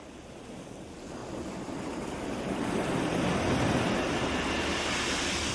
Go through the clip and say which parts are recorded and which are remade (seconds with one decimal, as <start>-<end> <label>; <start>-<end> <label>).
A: 0.0-5.5 recorded